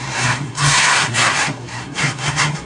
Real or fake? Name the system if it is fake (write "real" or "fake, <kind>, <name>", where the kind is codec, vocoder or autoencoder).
fake, codec, SNAC